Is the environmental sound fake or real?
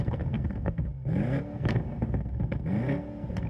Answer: fake